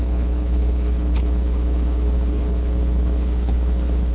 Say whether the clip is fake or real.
fake